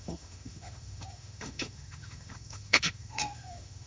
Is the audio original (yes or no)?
no